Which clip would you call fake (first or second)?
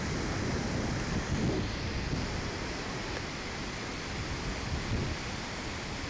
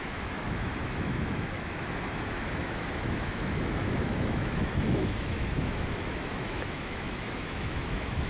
second